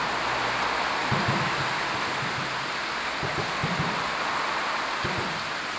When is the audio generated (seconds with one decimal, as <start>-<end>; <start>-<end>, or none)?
none